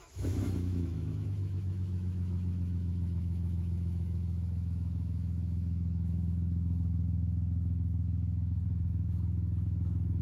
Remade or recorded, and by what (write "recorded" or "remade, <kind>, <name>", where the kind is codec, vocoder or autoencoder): remade, autoencoder, DAC-VAE